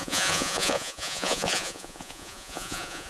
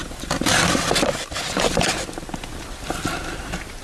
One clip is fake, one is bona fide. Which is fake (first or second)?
first